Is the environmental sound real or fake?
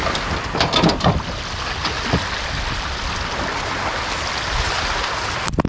real